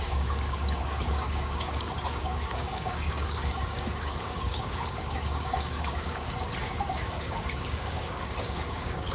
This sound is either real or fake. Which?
fake